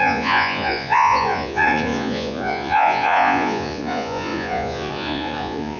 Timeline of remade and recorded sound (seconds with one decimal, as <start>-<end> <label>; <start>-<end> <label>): 0.0-5.8 remade